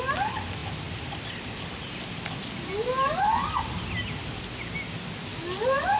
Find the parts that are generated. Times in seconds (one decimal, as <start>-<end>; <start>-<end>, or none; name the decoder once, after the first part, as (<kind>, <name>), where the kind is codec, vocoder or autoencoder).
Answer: none